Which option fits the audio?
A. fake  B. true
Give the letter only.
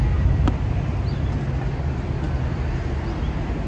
B